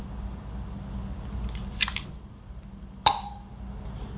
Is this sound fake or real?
real